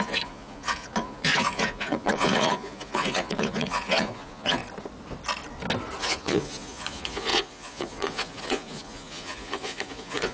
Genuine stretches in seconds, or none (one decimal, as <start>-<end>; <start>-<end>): 4.6-6.0